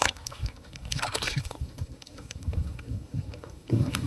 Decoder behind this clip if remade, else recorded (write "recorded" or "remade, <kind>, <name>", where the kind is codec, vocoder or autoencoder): remade, codec, SNAC